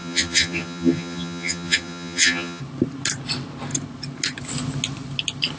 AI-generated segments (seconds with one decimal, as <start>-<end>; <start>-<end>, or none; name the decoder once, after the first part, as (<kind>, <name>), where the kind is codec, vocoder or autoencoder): 0.0-2.6 (vocoder, HiFi-GAN)